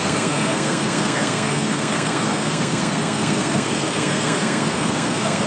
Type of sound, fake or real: fake